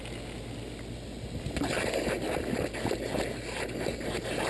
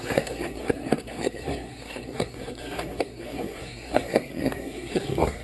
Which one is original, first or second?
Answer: first